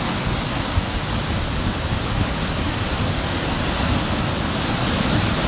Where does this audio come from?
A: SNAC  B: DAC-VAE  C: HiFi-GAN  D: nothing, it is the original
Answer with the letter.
D